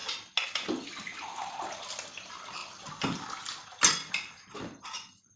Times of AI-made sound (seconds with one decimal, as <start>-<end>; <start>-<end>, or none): none